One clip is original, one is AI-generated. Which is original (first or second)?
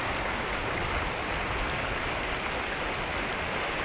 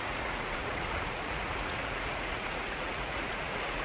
first